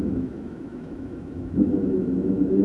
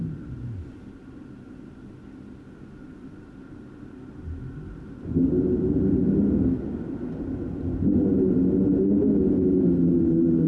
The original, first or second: second